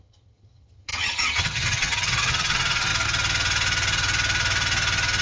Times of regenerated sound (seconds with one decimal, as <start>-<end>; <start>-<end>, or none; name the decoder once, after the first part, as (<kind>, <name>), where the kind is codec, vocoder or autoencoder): 0.0-2.9 (vocoder, HiFi-GAN)